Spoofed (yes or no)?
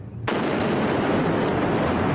no